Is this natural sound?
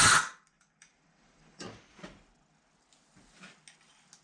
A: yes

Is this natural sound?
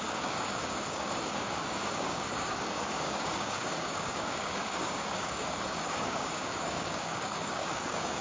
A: no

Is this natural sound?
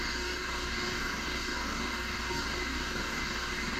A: no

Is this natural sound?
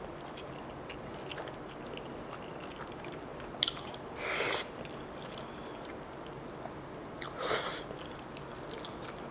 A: yes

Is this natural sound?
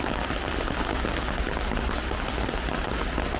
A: yes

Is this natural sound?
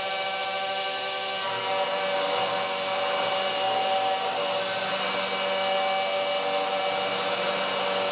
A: yes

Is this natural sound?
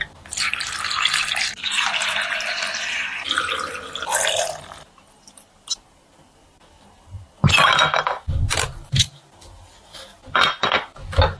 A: yes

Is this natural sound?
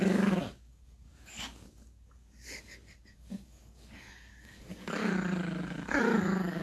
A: no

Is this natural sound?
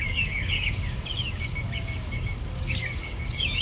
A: no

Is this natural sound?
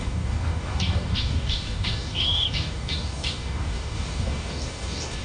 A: no